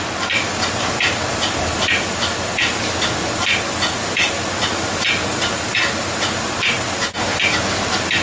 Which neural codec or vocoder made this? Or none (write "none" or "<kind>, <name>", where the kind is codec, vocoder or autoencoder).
none